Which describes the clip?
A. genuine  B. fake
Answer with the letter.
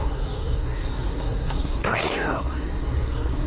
B